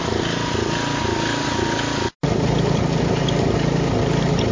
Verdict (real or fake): real